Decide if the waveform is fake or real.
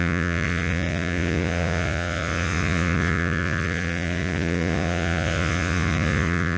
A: fake